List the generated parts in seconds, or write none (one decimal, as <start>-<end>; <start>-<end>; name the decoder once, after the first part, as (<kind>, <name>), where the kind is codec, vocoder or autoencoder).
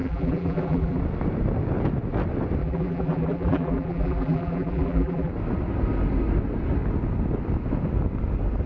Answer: 0.0-1.0 (vocoder, BigVGAN v2); 2.6-5.3